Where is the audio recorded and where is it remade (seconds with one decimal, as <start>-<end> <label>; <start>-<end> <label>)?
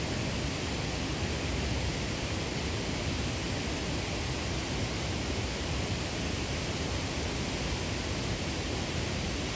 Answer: 0.0-1.5 recorded; 1.5-2.5 remade; 2.5-9.6 recorded